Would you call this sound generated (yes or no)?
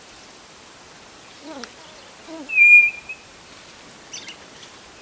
no